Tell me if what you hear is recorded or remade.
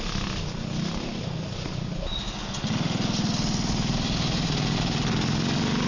recorded